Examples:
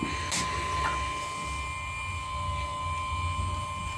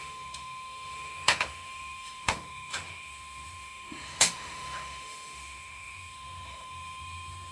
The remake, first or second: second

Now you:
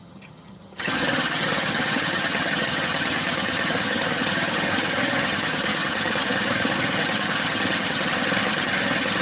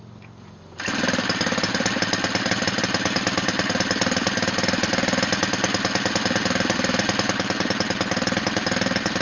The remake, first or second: first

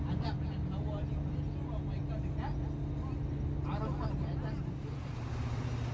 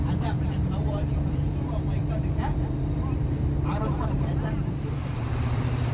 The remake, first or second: second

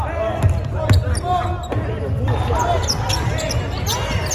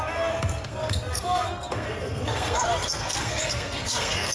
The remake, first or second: second